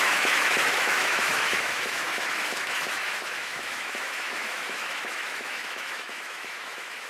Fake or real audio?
fake